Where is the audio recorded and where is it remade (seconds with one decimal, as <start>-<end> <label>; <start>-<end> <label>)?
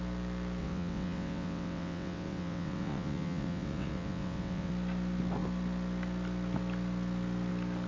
0.0-0.6 recorded; 0.6-4.7 remade; 4.7-7.9 recorded